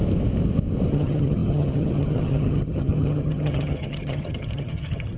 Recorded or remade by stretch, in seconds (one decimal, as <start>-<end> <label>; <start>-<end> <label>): 0.0-0.9 recorded; 0.9-5.2 remade